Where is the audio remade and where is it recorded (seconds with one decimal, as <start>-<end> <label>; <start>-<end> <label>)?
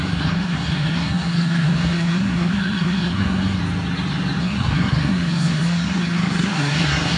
0.0-3.6 remade; 3.6-4.4 recorded; 4.4-7.2 remade